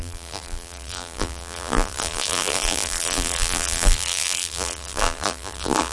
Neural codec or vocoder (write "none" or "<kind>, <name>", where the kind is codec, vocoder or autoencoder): vocoder, BigVGAN v2